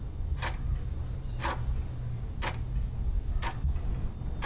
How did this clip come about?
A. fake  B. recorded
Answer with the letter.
B